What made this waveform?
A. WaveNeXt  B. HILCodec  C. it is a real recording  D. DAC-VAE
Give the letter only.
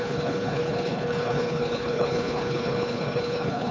B